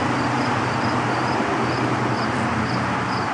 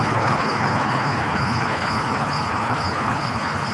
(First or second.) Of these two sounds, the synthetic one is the second